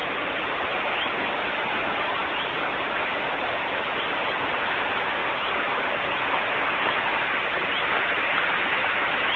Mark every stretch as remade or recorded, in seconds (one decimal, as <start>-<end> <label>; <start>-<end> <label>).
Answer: 0.0-9.4 recorded